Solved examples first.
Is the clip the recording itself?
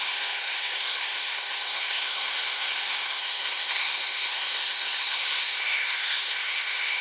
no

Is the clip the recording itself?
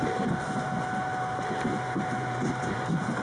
yes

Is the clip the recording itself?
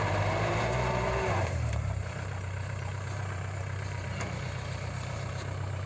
no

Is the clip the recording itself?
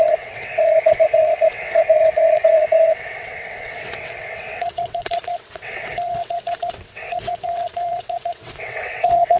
no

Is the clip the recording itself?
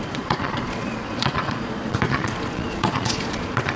no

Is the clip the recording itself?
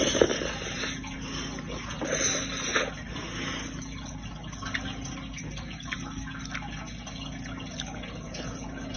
yes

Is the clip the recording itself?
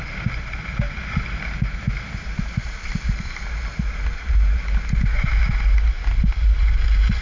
yes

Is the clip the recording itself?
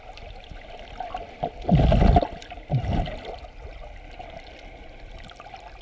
yes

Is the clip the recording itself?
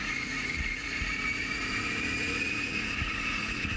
no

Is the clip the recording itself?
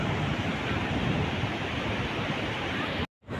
yes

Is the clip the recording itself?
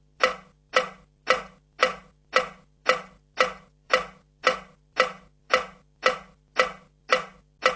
yes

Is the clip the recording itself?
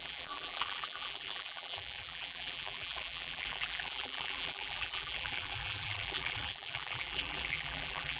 no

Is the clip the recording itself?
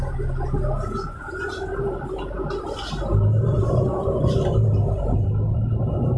yes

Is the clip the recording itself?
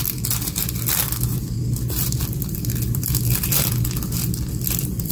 yes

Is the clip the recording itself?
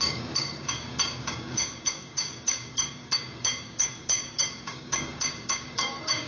no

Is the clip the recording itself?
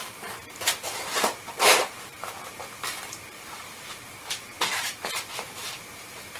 no